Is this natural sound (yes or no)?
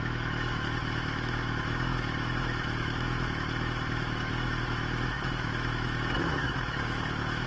no